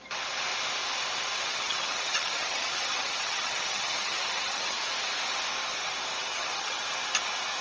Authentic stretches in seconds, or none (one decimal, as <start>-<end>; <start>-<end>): 0.0-1.4; 4.9-6.2; 6.8-7.6